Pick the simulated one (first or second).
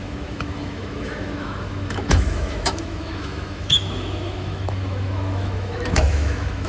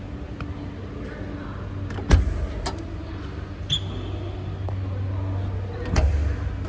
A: first